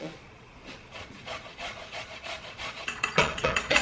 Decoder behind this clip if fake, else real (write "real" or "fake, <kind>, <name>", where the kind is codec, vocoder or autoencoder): fake, vocoder, Vocos